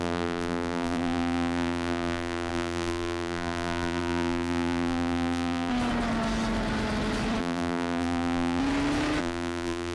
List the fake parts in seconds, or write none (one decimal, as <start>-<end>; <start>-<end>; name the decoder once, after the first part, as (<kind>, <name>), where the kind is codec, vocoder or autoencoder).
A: 0.0-5.7 (vocoder, BigVGAN v2); 7.4-8.6; 9.2-9.9